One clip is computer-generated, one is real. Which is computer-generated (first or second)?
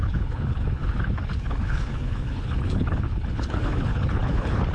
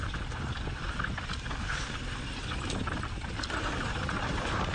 first